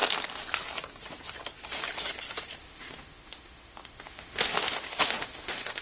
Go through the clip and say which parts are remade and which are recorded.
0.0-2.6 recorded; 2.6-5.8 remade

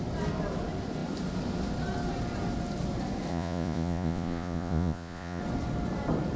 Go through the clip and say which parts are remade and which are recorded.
0.0-3.3 recorded; 3.3-5.4 remade; 5.4-6.4 recorded

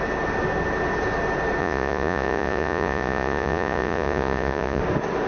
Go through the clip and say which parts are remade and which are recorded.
0.0-1.6 recorded; 1.6-4.8 remade; 4.8-5.3 recorded

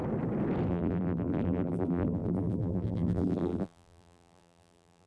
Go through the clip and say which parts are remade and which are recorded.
0.0-0.7 recorded; 0.7-5.1 remade

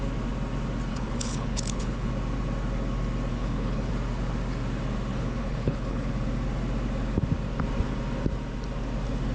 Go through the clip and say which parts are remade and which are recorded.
0.0-0.9 recorded; 0.9-2.1 remade; 2.1-3.3 recorded; 3.3-3.9 remade; 3.9-5.1 recorded; 5.1-6.1 remade; 6.1-9.3 recorded

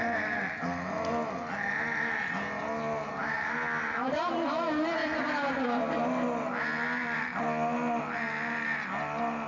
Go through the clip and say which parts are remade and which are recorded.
0.0-9.5 recorded